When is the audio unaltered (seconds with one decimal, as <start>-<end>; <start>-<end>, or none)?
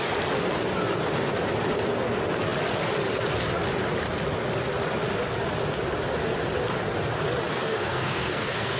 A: 0.0-7.5